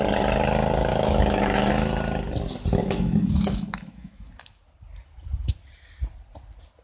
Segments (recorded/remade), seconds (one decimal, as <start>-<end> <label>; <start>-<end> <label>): 0.0-0.9 recorded; 0.9-1.7 remade; 1.7-2.8 recorded; 2.8-4.3 remade; 4.3-6.8 recorded